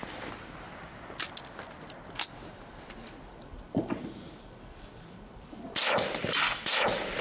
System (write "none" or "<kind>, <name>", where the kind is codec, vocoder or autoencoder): none